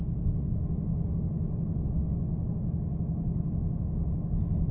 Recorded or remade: recorded